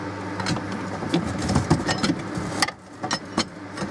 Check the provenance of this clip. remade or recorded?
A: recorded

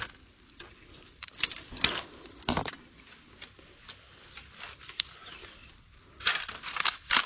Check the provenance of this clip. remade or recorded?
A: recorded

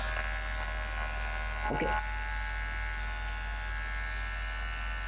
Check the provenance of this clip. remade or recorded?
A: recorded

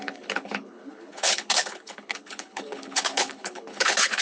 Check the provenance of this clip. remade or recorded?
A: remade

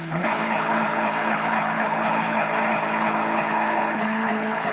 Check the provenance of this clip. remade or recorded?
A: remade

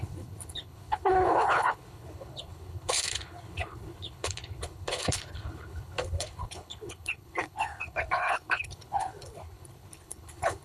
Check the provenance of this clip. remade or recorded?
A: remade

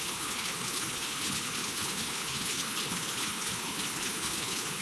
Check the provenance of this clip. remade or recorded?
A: remade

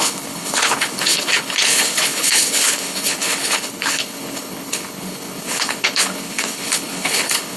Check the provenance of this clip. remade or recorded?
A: remade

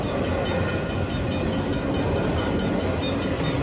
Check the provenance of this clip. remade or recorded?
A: recorded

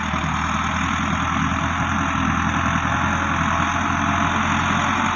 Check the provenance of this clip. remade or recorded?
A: recorded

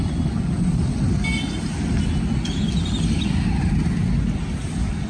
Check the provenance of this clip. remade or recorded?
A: recorded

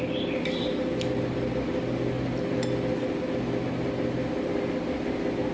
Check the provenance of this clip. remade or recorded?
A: recorded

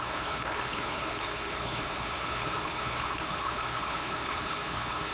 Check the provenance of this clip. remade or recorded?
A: remade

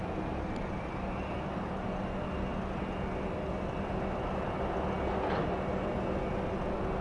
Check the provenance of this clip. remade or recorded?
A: recorded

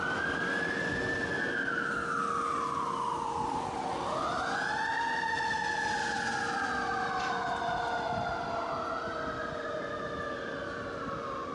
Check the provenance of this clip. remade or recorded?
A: recorded